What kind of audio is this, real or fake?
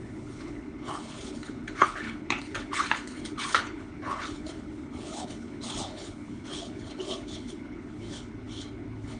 fake